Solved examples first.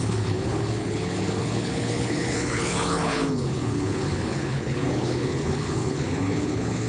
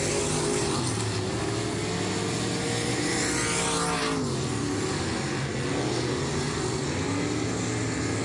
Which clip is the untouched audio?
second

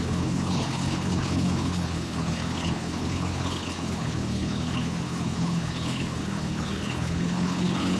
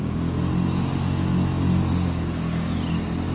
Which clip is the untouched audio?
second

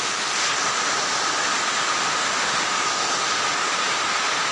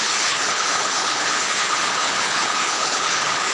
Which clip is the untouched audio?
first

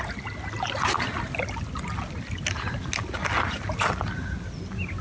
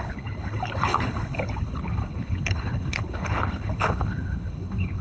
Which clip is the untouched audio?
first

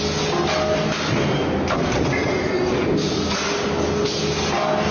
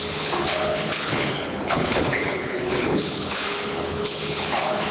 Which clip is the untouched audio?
first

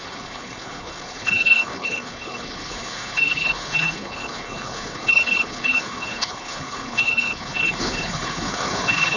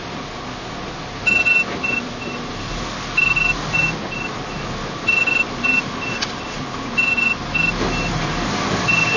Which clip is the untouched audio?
second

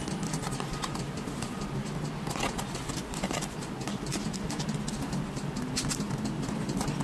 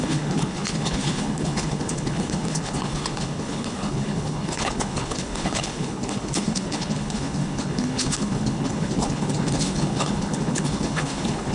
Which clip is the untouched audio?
first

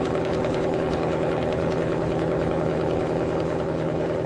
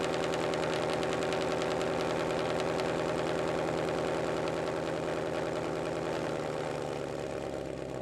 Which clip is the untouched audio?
second